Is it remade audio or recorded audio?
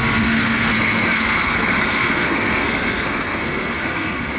remade